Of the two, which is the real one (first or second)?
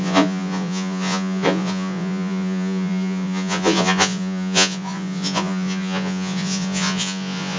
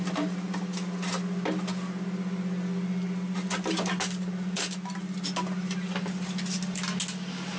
second